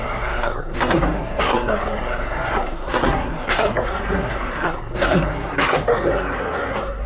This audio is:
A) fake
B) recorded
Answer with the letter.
A